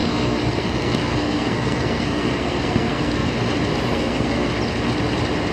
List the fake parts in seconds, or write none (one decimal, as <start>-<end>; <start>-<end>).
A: 0.0-3.3; 3.9-4.5